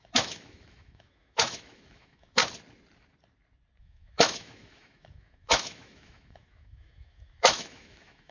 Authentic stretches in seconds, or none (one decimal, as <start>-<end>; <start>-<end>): 2.4-3.8